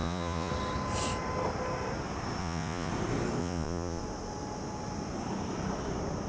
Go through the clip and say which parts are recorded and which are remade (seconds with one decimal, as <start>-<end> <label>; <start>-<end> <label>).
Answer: 0.0-0.5 remade; 0.5-2.4 recorded; 2.4-2.9 remade; 2.9-3.4 recorded; 3.4-4.0 remade; 4.0-6.3 recorded